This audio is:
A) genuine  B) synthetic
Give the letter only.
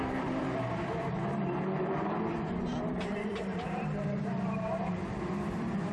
B